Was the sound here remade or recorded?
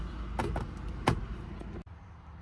recorded